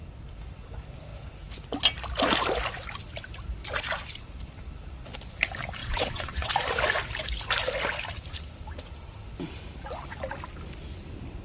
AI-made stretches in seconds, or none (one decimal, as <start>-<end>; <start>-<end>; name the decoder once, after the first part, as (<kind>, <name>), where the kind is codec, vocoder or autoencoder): 5.8-6.5 (vocoder, WaveNeXt)